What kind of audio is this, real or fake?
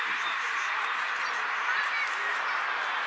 real